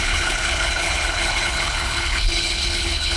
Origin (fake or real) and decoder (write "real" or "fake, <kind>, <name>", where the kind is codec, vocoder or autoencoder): fake, codec, HILCodec